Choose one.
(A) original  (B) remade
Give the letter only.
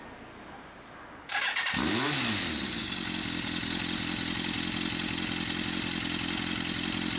A